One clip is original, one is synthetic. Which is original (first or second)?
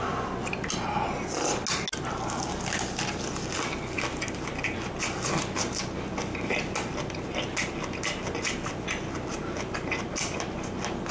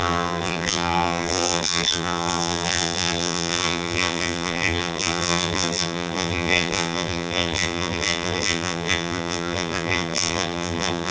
first